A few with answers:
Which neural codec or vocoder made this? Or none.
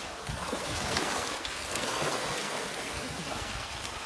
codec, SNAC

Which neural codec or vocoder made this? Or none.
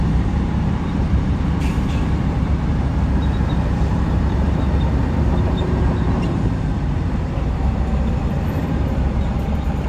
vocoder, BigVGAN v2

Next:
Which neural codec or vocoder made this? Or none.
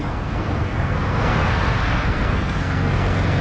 codec, SNAC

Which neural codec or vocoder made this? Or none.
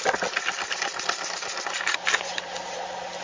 none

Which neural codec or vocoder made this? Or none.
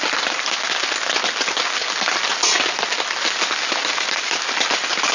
none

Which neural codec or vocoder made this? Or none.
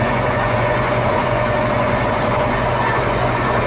vocoder, Vocos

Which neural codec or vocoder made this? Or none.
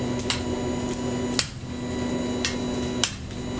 none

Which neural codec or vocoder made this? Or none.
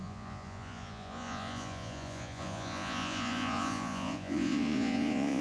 vocoder, Vocos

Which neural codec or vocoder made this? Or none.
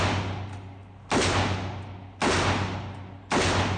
none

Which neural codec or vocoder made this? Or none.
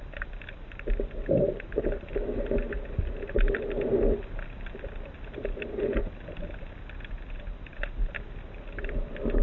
none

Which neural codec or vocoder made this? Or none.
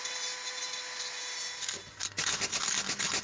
none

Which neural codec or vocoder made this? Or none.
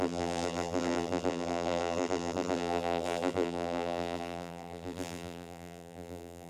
vocoder, BigVGAN v2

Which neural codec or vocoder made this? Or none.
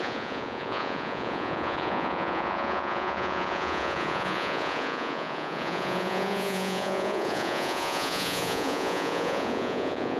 vocoder, Vocos